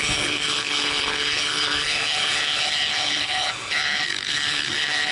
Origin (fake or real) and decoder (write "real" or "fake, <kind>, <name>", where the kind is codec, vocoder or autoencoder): fake, codec, HILCodec